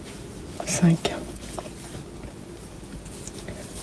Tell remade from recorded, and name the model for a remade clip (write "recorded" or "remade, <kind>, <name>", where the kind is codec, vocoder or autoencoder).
recorded